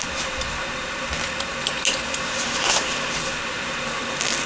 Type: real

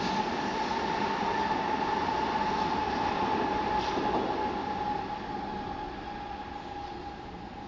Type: real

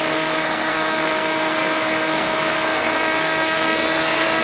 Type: fake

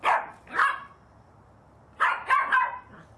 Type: real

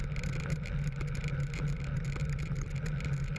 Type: real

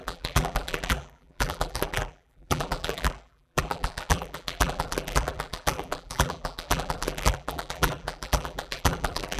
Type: fake